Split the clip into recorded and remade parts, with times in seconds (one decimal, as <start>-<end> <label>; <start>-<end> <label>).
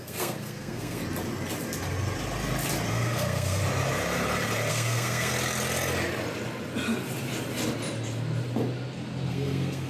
0.0-1.0 remade; 1.0-2.9 recorded; 2.9-3.6 remade; 3.6-4.7 recorded; 4.7-5.3 remade; 5.3-9.3 recorded; 9.3-9.9 remade